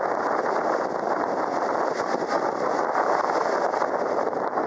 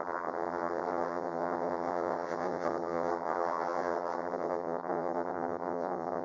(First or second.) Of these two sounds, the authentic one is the first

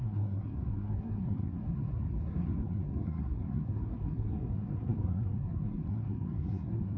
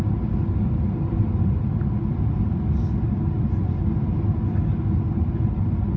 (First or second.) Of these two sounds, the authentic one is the second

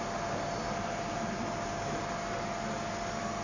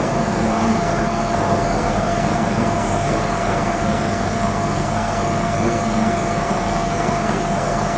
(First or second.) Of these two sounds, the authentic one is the first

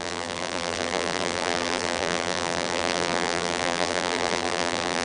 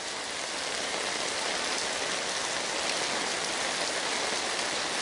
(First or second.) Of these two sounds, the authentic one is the second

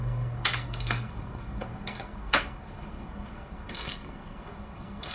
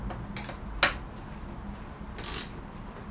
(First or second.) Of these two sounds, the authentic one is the second